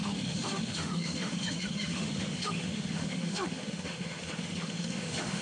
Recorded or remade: remade